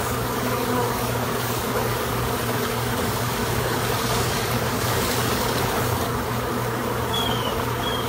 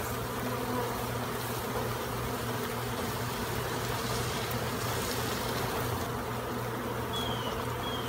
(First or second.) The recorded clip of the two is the second